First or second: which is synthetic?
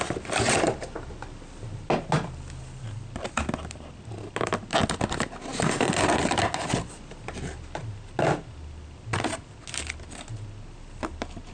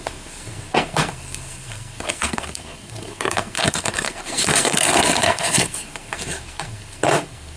second